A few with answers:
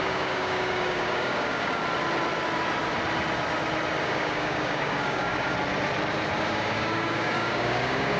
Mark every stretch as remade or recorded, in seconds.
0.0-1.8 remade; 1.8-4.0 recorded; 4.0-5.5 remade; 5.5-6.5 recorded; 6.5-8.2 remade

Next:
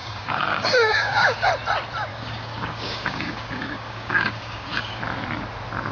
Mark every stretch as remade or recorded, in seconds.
0.0-1.5 remade; 1.5-2.1 recorded; 2.1-5.0 remade; 5.0-5.9 recorded

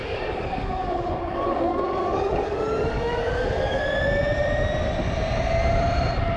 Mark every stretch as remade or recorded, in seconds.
0.0-3.8 remade; 3.8-6.4 recorded

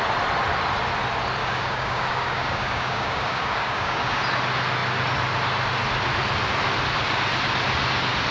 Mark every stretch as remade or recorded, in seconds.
0.0-1.4 recorded; 1.4-4.2 remade; 4.2-8.3 recorded

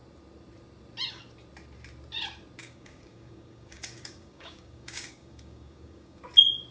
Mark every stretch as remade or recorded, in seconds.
0.0-2.6 recorded; 2.6-6.2 remade; 6.2-6.7 recorded